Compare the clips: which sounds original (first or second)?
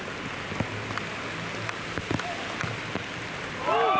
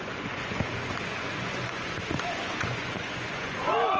first